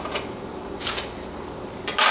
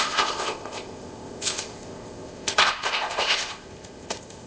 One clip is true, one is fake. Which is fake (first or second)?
second